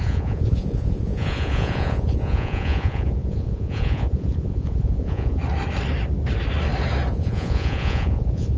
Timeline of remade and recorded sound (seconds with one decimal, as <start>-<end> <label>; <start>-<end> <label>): 0.0-5.4 remade; 5.4-7.1 recorded; 7.1-8.6 remade